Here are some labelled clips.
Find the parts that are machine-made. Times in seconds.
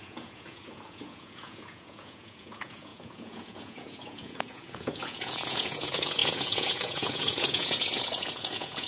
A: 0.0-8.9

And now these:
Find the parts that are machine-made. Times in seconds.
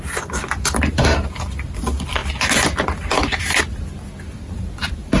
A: none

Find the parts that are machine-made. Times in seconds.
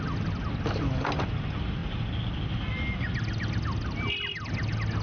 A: none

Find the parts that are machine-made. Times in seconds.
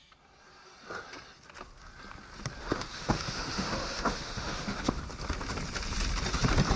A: 2.6-5.0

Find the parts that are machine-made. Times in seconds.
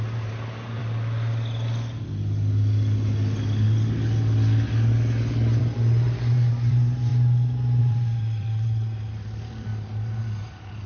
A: 0.0-0.8; 5.6-7.1; 7.8-10.9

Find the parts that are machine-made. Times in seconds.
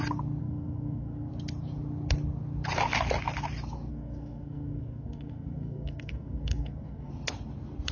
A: 0.4-1.3; 3.9-7.1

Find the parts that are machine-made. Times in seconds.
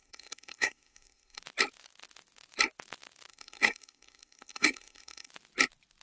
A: 0.0-1.4; 3.3-5.3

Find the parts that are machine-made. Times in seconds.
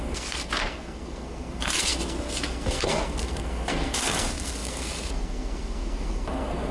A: 0.0-6.7